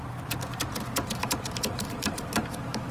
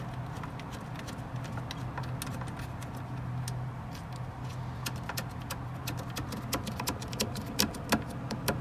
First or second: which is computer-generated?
first